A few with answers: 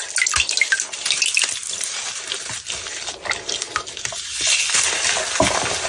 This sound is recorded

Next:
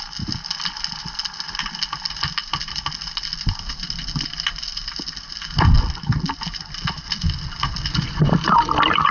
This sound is remade